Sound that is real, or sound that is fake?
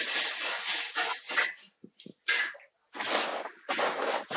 real